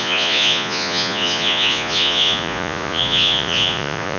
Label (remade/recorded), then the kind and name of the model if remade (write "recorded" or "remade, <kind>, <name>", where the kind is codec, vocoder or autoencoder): remade, vocoder, Vocos